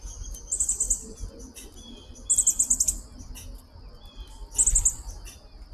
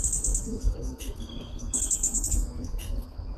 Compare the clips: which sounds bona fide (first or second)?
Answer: first